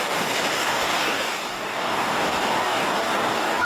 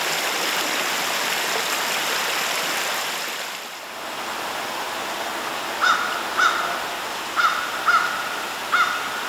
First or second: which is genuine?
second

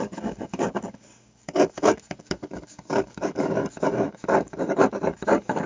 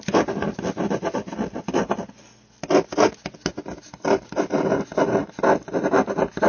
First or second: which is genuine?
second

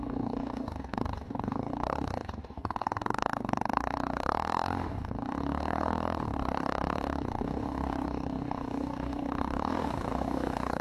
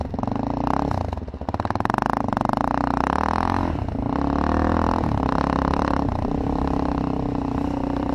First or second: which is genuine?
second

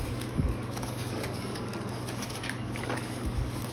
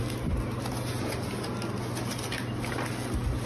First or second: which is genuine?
second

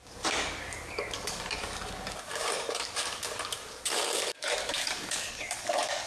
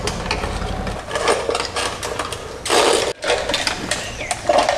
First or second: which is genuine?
second